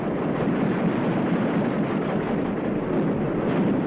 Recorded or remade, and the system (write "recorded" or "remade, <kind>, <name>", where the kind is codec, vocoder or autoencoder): recorded